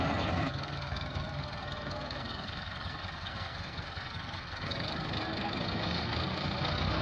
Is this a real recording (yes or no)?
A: no